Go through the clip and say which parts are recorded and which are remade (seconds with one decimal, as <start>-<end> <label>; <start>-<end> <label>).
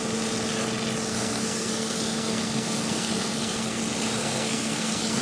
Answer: 0.0-1.1 recorded; 1.1-3.8 remade; 3.8-4.2 recorded; 4.2-5.2 remade